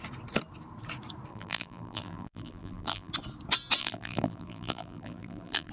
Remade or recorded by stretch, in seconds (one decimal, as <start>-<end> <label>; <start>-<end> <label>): 0.0-1.3 recorded; 1.3-3.1 remade; 3.1-3.8 recorded; 3.8-5.7 remade